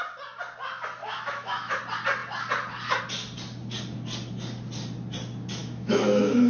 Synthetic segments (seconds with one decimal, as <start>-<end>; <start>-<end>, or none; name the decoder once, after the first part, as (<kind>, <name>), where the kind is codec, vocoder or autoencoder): 1.0-1.8 (autoencoder, DAC-VAE); 5.6-6.5